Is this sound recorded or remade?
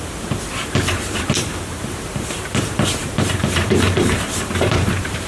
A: remade